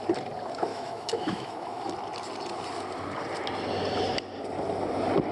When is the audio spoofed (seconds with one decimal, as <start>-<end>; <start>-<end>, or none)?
0.7-1.9